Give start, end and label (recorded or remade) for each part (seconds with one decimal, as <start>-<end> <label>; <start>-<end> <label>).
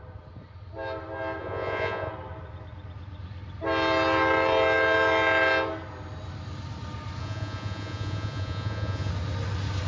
0.0-1.4 recorded; 1.4-2.1 remade; 2.1-7.2 recorded; 7.2-9.1 remade; 9.1-9.9 recorded